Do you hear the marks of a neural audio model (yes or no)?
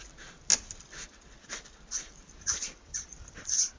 no